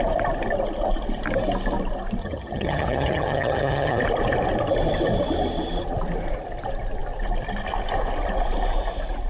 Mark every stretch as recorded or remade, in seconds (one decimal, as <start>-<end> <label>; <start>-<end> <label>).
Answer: 0.0-2.2 recorded; 2.2-4.0 remade; 4.0-9.3 recorded